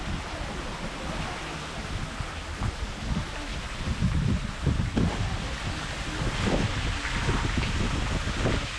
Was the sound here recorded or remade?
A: recorded